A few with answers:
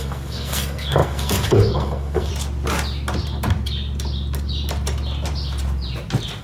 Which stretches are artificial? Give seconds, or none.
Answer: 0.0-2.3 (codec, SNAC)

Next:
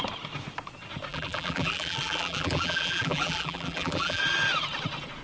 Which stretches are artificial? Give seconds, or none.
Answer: 1.1-4.2 (vocoder, BigVGAN v2)

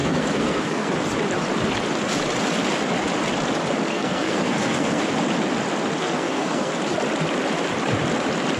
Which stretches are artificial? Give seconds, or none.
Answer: 0.0-0.9 (codec, SNAC); 3.9-5.0; 6.0-6.7

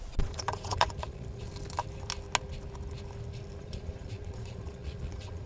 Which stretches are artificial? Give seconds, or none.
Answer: 0.0-1.5 (vocoder, Vocos); 3.6-5.5

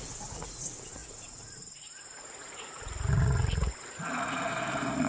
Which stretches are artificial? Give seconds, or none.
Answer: 0.0-5.1 (vocoder, Vocos)

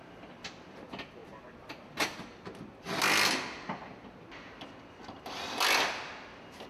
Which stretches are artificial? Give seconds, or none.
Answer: none

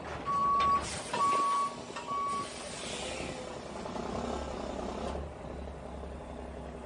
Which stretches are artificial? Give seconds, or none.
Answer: none

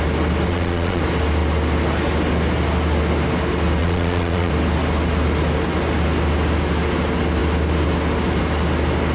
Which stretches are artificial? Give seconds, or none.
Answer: 0.5-1.0 (vocoder, Vocos); 3.8-4.5